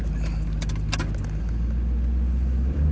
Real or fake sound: real